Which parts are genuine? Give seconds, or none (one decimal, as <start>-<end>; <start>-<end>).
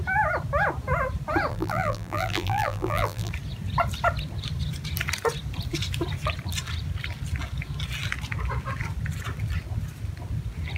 0.0-1.5; 3.3-10.8